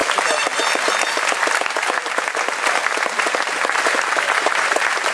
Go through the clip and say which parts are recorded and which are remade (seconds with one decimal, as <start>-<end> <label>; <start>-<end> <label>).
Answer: 0.0-5.1 recorded